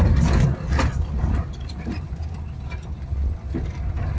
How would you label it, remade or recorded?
recorded